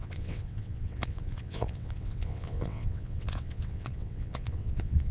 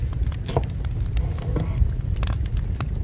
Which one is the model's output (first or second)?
first